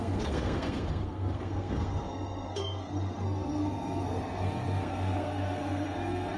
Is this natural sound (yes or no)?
no